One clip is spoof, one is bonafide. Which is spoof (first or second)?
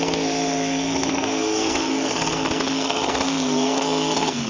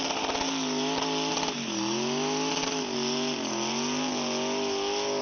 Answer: first